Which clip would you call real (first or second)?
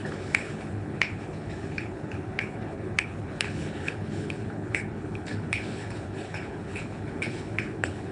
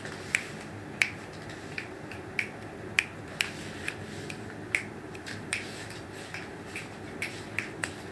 second